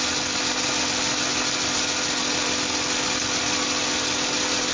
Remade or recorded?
recorded